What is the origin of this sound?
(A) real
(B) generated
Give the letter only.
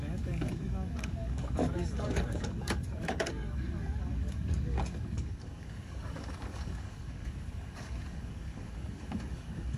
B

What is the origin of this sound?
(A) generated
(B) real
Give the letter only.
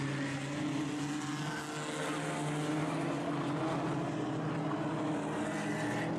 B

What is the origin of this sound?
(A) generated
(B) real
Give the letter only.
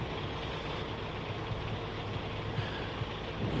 B